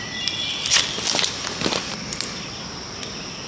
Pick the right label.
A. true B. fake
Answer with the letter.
A